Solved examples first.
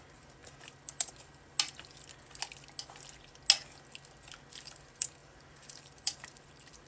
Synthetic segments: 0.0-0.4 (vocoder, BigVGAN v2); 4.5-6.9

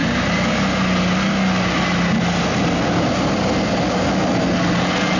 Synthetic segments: none